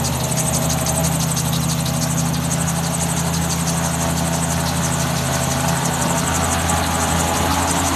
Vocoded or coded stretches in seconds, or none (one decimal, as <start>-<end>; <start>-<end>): none